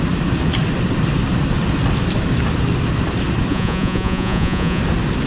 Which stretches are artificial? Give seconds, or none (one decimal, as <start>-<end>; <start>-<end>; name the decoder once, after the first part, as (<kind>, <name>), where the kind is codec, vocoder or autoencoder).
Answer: 3.5-4.8 (vocoder, Vocos)